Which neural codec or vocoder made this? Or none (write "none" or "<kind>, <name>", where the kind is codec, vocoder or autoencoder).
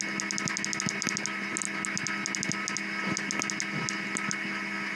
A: none